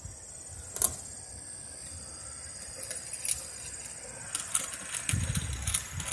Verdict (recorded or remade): recorded